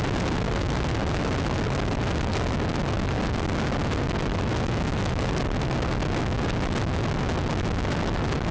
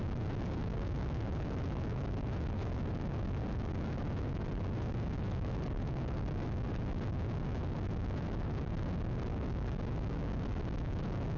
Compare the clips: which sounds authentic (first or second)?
first